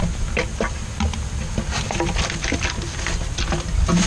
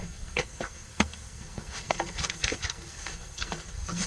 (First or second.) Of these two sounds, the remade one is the second